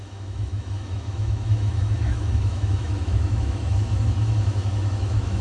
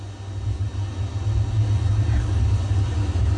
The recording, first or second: second